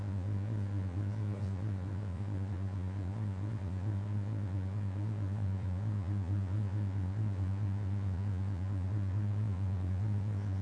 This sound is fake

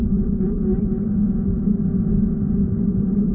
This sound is real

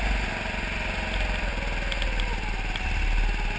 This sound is real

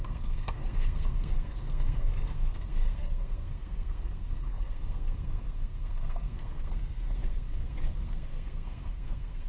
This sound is fake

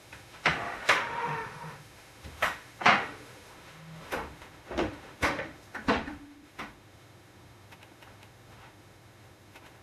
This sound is fake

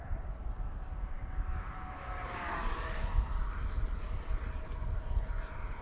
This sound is real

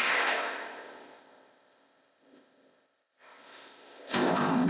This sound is fake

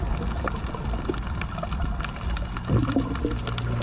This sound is real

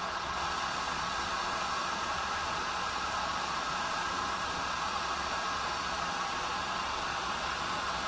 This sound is fake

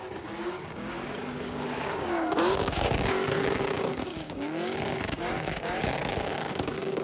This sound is fake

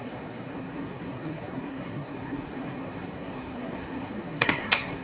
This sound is fake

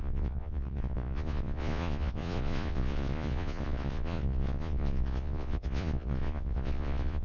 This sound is fake